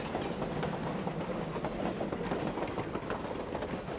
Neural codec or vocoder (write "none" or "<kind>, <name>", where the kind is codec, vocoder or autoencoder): none